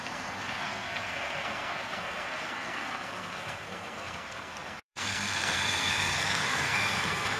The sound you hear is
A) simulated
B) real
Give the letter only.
A